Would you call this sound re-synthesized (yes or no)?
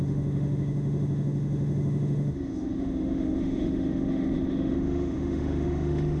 yes